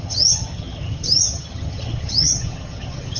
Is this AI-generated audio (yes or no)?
yes